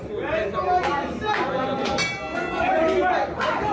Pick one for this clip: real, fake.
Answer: real